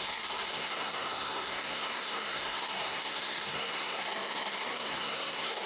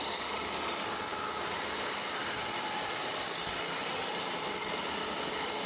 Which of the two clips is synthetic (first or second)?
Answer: first